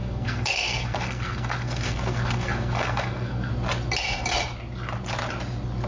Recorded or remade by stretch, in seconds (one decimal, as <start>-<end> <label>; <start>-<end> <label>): 0.0-3.5 remade; 3.5-5.9 recorded